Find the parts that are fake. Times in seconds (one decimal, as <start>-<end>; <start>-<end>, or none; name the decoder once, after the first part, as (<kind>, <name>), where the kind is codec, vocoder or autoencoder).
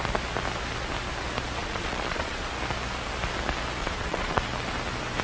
1.6-2.5 (vocoder, Vocos); 3.8-4.4